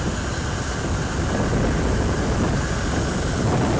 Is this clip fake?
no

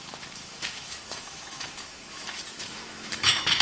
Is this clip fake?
yes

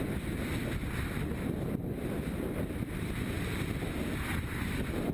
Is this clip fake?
no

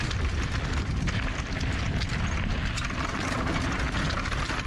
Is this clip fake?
no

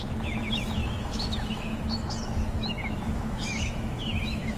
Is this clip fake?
yes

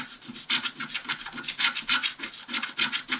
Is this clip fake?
no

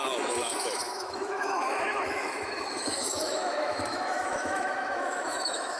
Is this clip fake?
yes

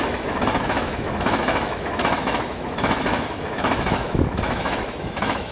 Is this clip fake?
yes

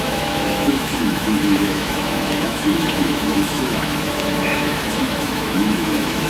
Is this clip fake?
yes